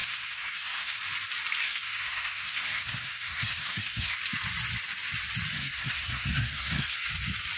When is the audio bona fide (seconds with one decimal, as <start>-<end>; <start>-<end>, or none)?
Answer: 1.0-1.6; 4.2-5.5; 7.1-7.6